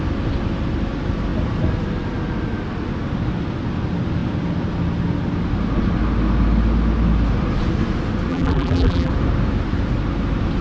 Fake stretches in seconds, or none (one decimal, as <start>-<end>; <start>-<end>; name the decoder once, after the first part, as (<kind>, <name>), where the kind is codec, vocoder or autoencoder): 8.3-9.1 (vocoder, BigVGAN v2)